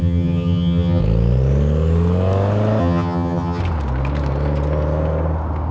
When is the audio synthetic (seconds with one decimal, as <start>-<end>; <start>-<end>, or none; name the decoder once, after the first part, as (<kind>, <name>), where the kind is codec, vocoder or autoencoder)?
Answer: 0.0-1.0 (vocoder, HiFi-GAN); 2.8-3.6